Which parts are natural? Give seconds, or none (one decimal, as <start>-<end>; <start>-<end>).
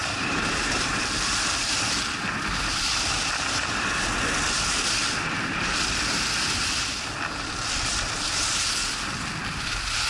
0.9-10.1